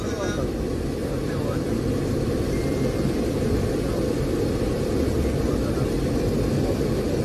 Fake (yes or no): no